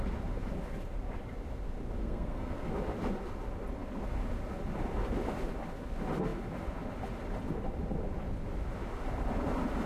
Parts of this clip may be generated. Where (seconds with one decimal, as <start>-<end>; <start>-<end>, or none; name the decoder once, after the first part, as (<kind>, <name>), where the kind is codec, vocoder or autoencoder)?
2.0-2.7 (codec, SNAC)